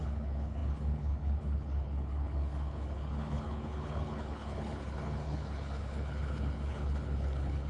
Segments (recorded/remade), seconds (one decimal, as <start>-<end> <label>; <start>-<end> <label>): 0.0-7.7 remade